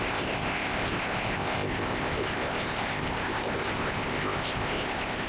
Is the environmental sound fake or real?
fake